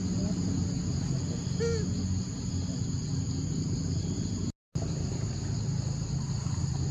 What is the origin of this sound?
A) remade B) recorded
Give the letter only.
B